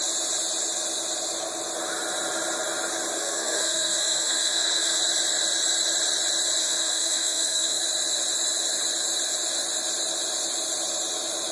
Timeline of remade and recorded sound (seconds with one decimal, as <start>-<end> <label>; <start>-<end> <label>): 0.0-3.2 recorded; 3.2-5.0 remade; 5.0-6.6 recorded; 6.6-7.8 remade; 7.8-11.5 recorded